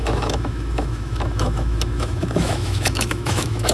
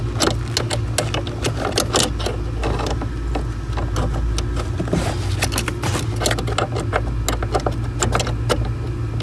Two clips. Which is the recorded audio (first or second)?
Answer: second